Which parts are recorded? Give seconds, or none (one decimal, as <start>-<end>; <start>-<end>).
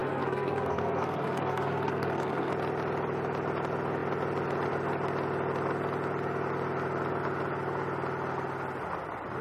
2.5-9.4